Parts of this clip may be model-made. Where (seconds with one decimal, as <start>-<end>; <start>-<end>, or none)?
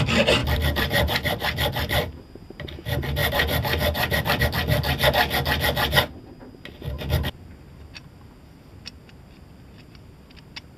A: 0.4-2.2; 3.2-4.4